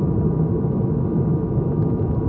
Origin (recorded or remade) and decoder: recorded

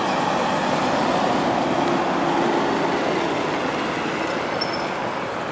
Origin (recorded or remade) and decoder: recorded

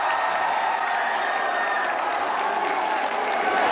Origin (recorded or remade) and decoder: recorded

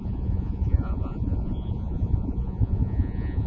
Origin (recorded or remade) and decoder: remade, vocoder, Vocos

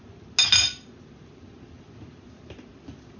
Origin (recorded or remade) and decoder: recorded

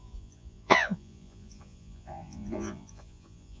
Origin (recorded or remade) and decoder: remade, vocoder, Vocos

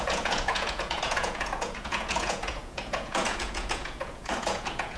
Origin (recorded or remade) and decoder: remade, vocoder, Vocos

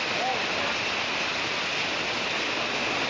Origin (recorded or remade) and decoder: recorded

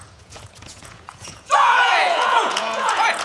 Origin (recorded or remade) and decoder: remade, vocoder, Vocos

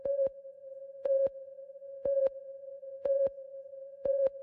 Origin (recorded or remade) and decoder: remade, vocoder, Vocos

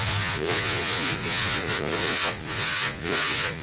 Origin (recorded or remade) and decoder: remade, vocoder, Vocos